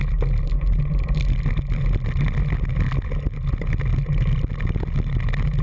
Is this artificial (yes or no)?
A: no